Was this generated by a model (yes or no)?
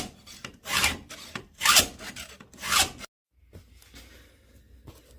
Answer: no